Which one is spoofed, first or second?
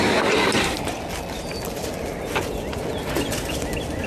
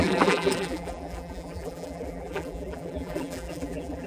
second